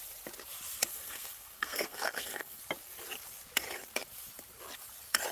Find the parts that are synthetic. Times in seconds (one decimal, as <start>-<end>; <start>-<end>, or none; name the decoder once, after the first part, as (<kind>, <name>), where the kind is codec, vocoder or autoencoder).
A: 0.9-2.6 (codec, SNAC)